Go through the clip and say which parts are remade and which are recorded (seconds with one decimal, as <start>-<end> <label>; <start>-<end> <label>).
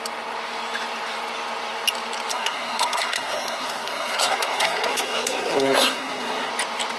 0.0-2.3 recorded; 2.3-6.5 remade; 6.5-7.0 recorded